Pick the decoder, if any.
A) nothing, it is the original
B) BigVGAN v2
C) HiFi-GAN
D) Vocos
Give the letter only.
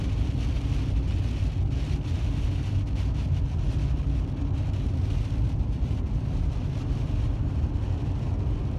A